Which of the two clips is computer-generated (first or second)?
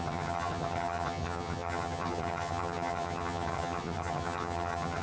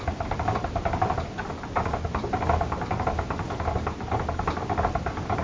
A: first